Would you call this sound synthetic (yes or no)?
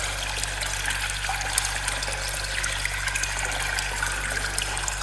no